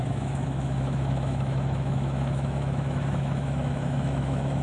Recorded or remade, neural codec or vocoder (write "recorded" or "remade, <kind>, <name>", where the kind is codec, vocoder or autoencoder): remade, autoencoder, DAC-VAE